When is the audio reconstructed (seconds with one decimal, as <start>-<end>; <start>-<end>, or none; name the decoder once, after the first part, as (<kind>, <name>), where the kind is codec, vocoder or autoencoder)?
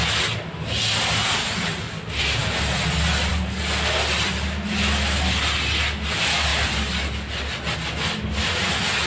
none